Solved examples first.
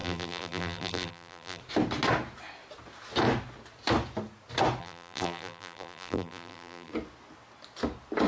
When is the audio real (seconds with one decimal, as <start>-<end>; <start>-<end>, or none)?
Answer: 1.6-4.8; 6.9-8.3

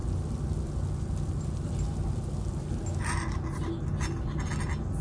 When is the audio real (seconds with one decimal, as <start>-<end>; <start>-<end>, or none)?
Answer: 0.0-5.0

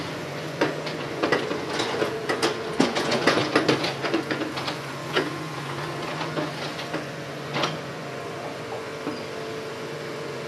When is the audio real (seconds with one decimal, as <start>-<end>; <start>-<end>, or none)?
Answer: 8.9-9.7